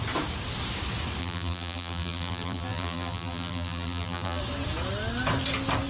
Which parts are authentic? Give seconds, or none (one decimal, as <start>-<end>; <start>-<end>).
0.0-1.2; 4.4-5.9